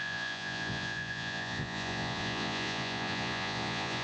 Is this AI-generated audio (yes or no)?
yes